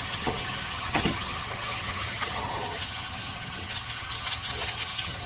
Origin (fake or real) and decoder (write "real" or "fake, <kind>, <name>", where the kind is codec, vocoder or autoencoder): fake, vocoder, HiFi-GAN